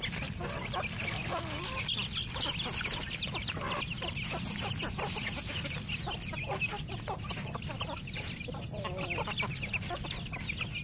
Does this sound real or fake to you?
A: real